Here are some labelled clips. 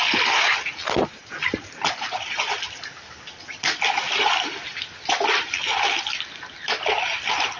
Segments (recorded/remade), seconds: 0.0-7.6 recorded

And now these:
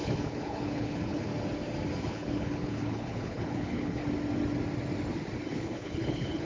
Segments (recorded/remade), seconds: 0.0-1.3 remade; 1.3-2.0 recorded; 2.0-4.0 remade; 4.0-5.5 recorded; 5.5-6.4 remade

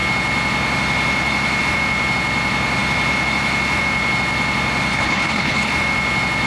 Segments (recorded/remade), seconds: 0.0-4.9 recorded; 4.9-5.7 remade; 5.7-6.5 recorded